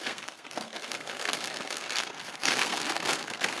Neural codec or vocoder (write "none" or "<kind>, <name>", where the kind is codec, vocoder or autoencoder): codec, SNAC